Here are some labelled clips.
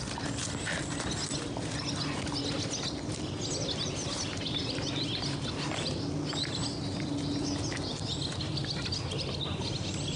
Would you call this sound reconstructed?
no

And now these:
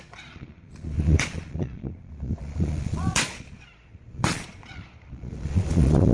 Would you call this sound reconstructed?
yes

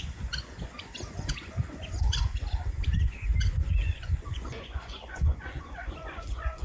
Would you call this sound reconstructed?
yes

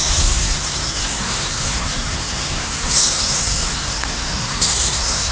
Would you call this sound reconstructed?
yes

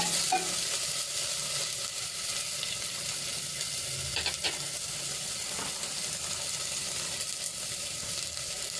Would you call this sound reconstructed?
no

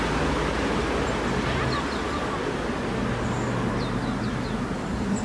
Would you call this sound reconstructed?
no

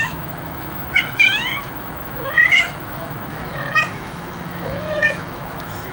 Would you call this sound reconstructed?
yes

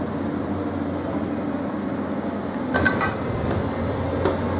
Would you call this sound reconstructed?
no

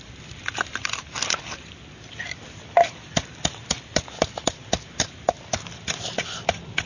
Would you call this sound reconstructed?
no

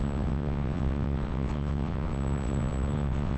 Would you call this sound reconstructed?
yes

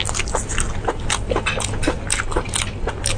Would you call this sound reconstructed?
no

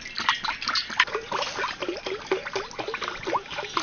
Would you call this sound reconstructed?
no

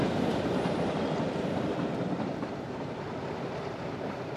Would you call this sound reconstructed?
yes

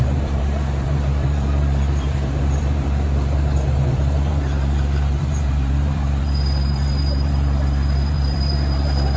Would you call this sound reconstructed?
yes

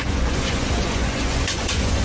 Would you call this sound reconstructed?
yes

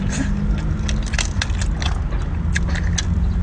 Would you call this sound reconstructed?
no